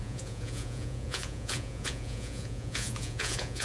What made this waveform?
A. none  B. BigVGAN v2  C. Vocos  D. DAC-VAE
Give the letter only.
C